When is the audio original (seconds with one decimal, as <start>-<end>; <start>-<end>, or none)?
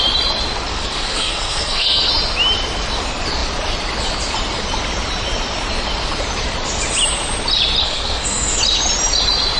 0.0-0.7; 2.1-7.8; 8.6-9.6